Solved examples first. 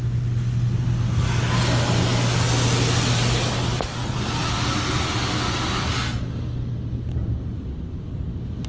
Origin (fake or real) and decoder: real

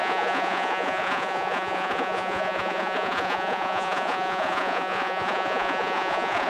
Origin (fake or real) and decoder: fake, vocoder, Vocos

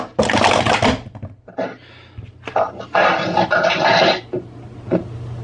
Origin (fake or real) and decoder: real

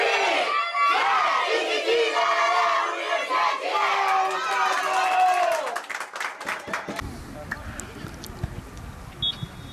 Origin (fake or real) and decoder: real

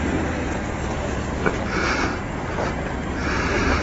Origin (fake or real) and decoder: real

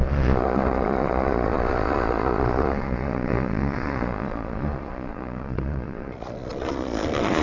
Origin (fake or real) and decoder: fake, vocoder, Vocos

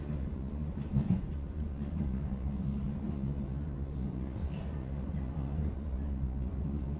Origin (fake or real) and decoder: fake, vocoder, Vocos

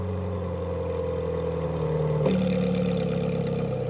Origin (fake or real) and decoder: real